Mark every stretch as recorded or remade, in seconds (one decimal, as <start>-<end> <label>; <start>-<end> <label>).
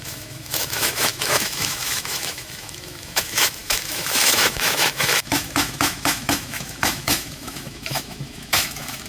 0.0-9.1 remade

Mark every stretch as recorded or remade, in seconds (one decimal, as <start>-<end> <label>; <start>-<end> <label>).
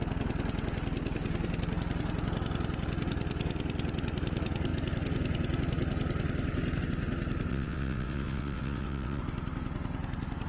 0.0-7.5 recorded; 7.5-9.2 remade; 9.2-10.5 recorded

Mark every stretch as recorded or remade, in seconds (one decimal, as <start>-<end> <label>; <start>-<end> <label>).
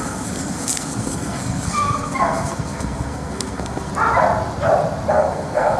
0.0-3.9 remade; 3.9-5.1 recorded; 5.1-5.8 remade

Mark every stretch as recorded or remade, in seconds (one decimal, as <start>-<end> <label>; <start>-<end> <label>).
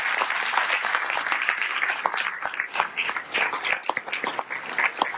0.0-0.8 recorded; 0.8-2.0 remade; 2.0-2.7 recorded; 2.7-3.4 remade; 3.4-5.2 recorded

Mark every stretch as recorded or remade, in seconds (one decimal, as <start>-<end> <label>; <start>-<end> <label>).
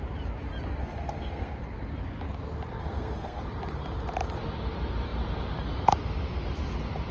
0.0-0.8 recorded; 0.8-1.6 remade; 1.6-2.8 recorded; 2.8-3.4 remade; 3.4-7.1 recorded